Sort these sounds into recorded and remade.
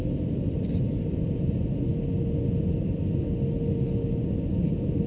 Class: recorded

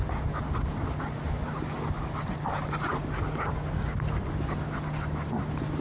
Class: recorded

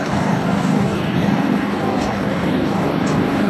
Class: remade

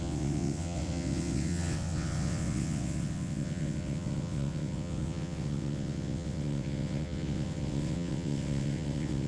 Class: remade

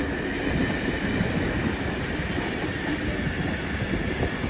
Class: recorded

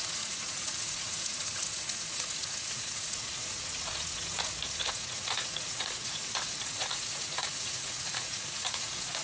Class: remade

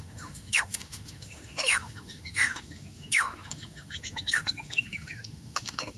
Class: remade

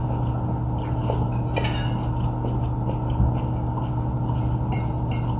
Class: recorded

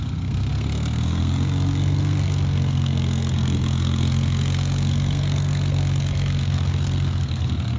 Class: remade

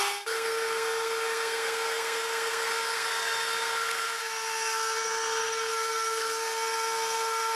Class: remade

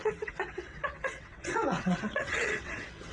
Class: remade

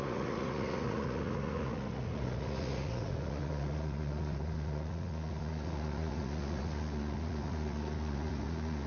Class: remade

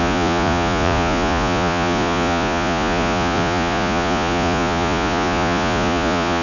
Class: remade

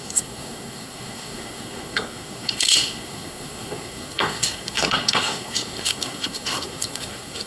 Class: remade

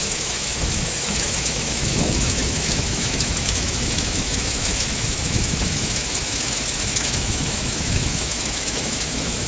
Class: remade